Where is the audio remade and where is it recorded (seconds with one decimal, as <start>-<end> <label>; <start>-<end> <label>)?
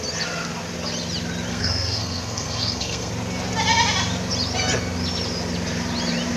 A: 0.0-1.5 recorded; 1.5-3.1 remade; 3.1-6.4 recorded